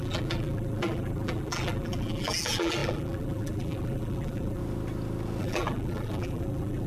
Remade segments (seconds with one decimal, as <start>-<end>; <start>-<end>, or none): 0.0-4.6; 5.4-6.9